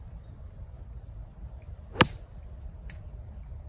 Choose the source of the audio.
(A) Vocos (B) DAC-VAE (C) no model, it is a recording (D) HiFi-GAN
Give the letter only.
C